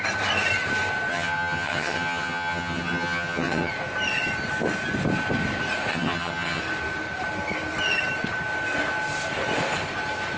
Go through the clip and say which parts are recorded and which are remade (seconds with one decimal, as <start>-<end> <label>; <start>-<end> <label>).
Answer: 0.0-1.1 recorded; 1.1-3.7 remade; 3.7-5.9 recorded; 5.9-6.6 remade; 6.6-10.4 recorded